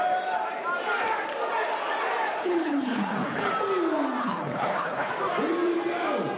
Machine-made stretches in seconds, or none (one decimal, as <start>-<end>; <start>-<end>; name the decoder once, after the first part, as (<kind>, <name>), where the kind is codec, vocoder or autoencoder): 2.4-3.5 (codec, HILCodec); 4.2-5.1